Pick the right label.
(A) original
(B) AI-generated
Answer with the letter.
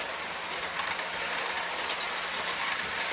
A